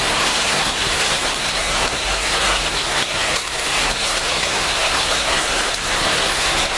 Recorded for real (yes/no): no